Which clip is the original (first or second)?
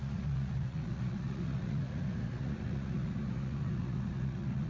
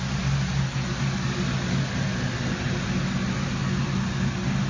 second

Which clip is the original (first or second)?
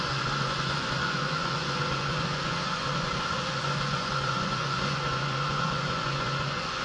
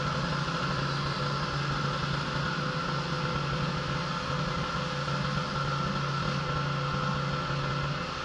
second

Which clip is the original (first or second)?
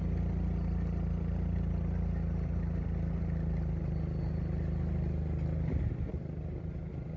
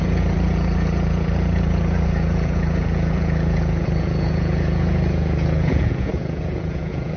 first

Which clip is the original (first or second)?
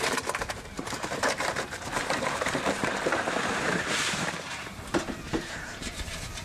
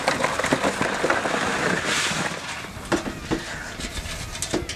second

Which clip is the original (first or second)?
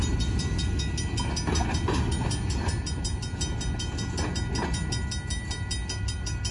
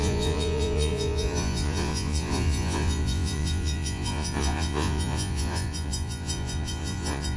first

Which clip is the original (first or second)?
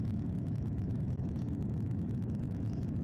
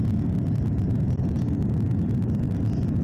second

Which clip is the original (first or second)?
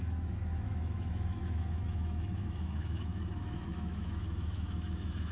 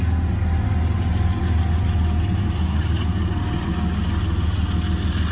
second